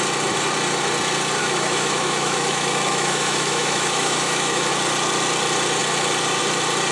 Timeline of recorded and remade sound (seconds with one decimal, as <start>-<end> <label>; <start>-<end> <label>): 0.0-1.4 recorded; 1.4-4.7 remade; 4.7-6.9 recorded